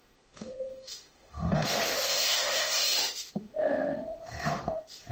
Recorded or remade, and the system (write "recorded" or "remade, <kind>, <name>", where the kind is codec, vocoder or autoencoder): remade, autoencoder, DAC-VAE